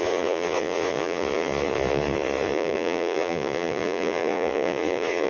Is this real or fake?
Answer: fake